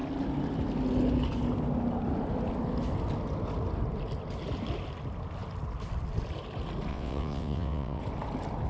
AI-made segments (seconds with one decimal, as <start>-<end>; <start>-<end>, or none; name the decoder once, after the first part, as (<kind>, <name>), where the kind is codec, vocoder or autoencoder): 6.9-8.0 (vocoder, WaveNeXt)